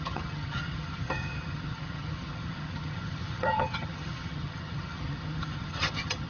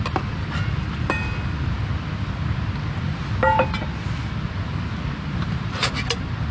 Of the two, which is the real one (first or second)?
second